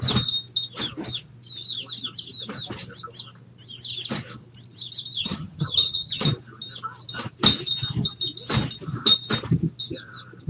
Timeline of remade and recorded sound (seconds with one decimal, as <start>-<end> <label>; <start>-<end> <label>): 0.0-5.2 recorded; 5.2-6.3 remade; 6.3-10.5 recorded